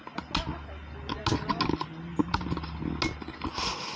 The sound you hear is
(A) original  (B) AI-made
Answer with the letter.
A